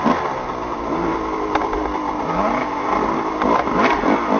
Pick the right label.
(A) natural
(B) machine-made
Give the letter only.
A